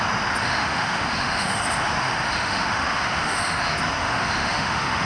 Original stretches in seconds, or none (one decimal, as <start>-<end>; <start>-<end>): 0.0-0.4; 1.6-2.0; 3.6-4.0